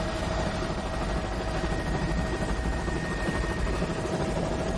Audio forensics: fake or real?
fake